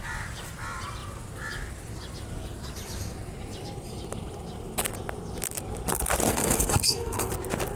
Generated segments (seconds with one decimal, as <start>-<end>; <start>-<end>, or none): 6.3-7.3